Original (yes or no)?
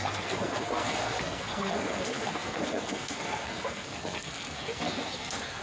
no